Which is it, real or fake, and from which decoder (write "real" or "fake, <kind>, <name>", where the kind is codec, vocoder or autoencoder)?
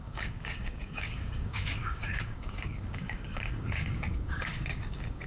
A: fake, codec, DAC